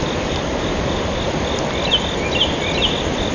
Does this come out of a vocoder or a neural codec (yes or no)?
no